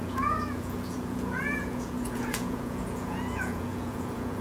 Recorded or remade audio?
remade